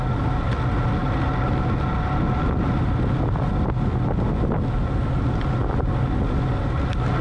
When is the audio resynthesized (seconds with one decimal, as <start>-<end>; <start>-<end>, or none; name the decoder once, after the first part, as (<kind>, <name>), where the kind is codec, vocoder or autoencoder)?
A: none